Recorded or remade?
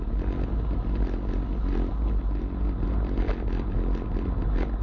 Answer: recorded